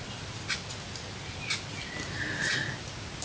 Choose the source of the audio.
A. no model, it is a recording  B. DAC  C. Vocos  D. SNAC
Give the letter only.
A